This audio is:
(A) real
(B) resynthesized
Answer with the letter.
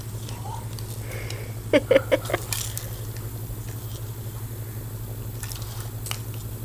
A